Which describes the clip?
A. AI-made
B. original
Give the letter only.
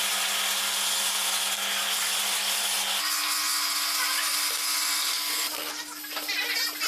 B